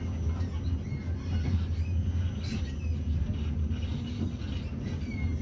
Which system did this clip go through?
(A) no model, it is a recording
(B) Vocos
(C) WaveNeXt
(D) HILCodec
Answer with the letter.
A